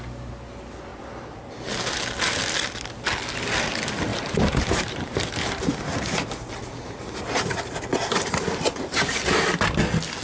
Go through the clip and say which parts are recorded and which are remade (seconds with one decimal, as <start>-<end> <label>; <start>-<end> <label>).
0.0-0.9 recorded; 0.9-1.5 remade; 1.5-4.1 recorded; 4.1-7.2 remade; 7.2-7.9 recorded; 7.9-9.2 remade; 9.2-10.2 recorded